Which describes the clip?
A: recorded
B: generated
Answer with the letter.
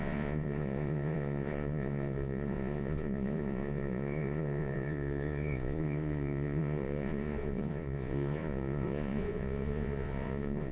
B